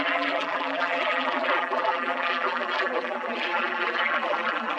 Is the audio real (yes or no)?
no